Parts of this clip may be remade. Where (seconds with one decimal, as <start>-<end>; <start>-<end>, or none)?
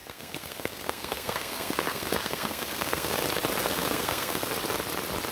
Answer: 0.0-3.2; 3.6-4.5